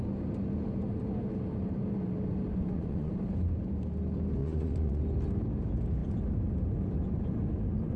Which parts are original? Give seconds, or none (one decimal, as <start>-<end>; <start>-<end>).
0.0-2.5; 3.1-4.4; 5.0-8.0